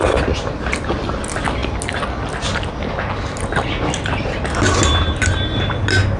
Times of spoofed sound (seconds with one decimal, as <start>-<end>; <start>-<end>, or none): none